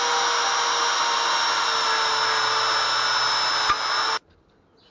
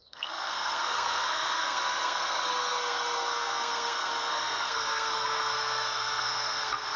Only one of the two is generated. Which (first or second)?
second